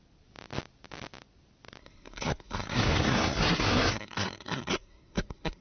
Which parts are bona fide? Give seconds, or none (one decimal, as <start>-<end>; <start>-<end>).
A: 0.0-1.8